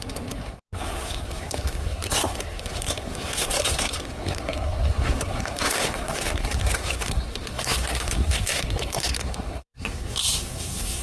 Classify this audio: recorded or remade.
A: remade